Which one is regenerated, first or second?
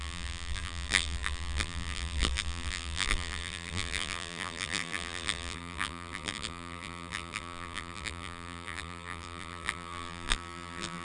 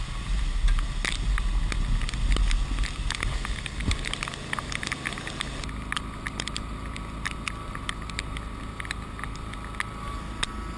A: first